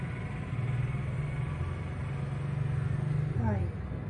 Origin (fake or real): real